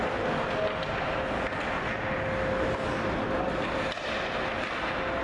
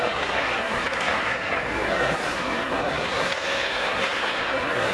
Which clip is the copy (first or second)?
second